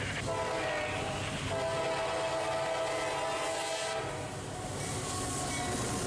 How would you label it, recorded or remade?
recorded